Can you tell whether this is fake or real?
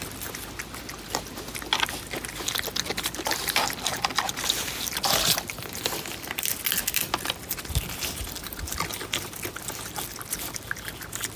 real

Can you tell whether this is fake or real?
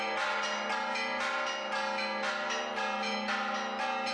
real